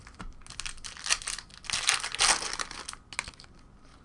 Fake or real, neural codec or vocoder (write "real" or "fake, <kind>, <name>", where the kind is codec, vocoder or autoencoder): real